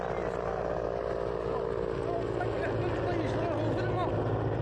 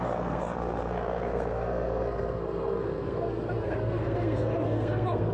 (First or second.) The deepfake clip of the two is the second